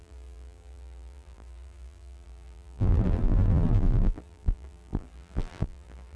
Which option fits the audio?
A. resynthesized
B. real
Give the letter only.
A